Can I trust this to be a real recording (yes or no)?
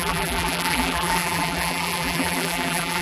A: no